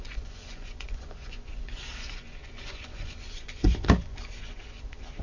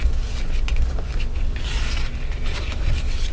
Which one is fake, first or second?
first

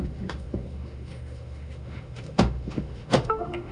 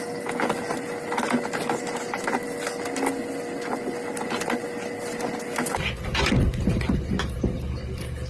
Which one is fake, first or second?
first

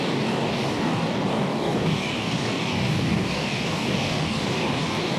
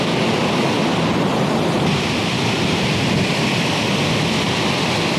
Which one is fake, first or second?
first